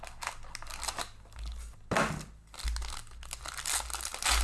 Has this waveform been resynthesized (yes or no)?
no